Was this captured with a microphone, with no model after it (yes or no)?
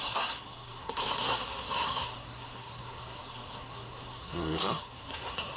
no